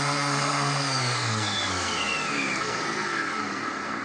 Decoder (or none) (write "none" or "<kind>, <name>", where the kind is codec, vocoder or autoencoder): codec, SNAC